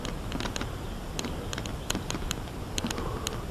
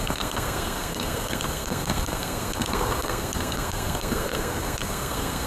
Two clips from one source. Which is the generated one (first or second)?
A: second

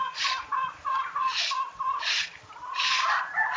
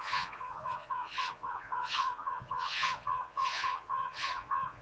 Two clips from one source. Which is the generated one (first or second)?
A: second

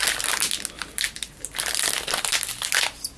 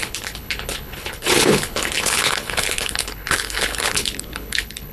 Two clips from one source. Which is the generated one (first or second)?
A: second